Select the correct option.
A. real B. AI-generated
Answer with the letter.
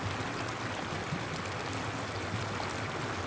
A